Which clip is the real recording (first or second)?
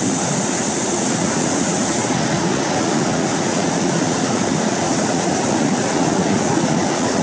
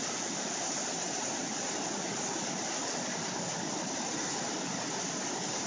second